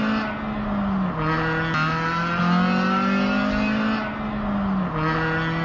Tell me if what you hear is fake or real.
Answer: real